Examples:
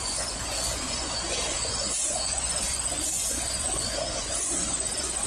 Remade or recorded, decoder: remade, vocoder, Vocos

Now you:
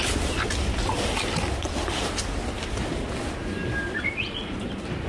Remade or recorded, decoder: recorded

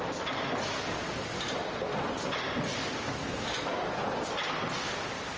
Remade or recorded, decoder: recorded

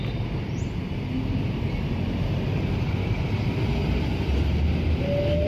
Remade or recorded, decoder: recorded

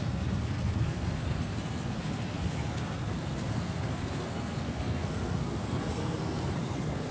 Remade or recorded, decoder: remade, codec, SNAC